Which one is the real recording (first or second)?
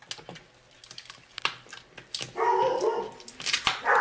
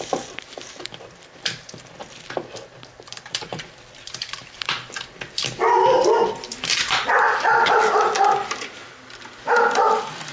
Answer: first